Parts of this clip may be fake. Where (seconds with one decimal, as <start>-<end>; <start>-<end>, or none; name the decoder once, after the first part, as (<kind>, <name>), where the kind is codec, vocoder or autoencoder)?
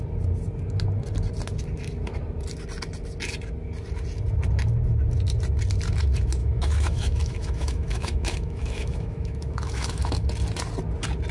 6.4-10.3 (autoencoder, DAC-VAE)